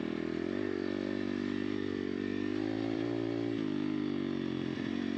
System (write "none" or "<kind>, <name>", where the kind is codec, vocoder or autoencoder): vocoder, BigVGAN v2